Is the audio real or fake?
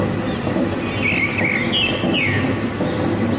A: real